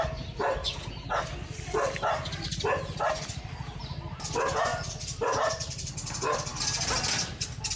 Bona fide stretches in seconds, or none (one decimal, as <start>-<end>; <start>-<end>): 0.0-4.7; 5.9-7.8